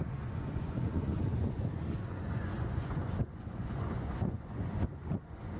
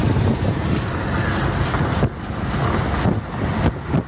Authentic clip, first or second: second